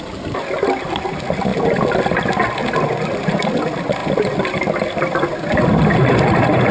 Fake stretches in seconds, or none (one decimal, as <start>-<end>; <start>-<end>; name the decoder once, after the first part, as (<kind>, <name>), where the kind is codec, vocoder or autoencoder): none